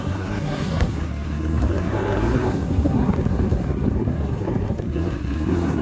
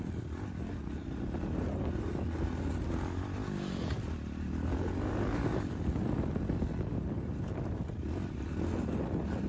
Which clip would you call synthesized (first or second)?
first